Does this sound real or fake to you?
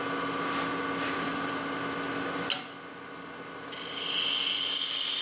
real